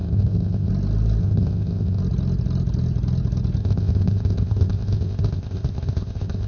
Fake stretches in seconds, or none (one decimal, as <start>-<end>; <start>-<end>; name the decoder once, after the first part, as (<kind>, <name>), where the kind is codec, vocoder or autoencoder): 0.0-0.7 (codec, ZipCodec); 1.2-2.0; 3.6-6.5